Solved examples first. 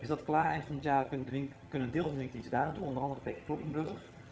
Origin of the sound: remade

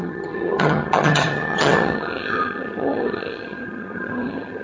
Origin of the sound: remade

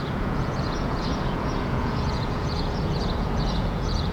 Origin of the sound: remade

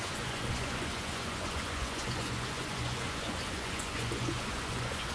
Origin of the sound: remade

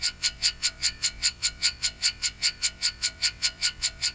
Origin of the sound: remade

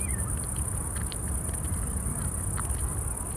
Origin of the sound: recorded